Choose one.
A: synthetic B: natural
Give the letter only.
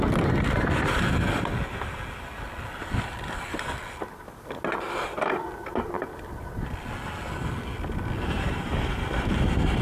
B